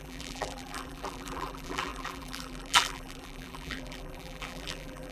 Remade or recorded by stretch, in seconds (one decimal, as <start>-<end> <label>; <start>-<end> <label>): 0.0-5.1 remade